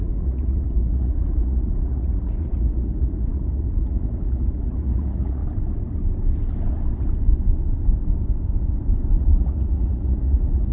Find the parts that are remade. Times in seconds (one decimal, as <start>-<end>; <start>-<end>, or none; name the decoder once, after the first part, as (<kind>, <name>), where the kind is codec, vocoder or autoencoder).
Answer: 0.0-5.4 (vocoder, Vocos); 9.1-10.7